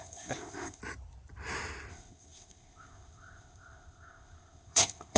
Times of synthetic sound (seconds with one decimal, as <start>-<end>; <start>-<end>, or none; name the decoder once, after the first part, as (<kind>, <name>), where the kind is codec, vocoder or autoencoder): 0.0-0.8 (codec, ZipCodec); 1.9-5.2

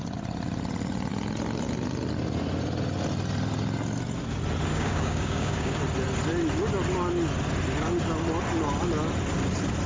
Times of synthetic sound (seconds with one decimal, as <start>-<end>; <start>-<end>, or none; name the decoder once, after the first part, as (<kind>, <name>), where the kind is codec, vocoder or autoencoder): 4.7-5.8 (codec, DAC)

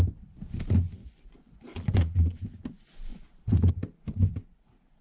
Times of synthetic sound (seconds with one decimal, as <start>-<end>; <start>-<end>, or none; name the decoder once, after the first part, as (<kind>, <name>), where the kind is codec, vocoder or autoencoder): 1.0-2.4 (vocoder, Vocos); 3.1-3.7